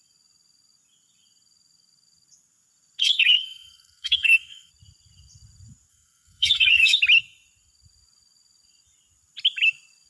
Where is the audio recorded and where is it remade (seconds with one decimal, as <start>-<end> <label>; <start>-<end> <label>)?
0.0-3.0 recorded; 3.0-4.7 remade; 4.7-5.9 recorded; 5.9-7.0 remade; 7.0-10.1 recorded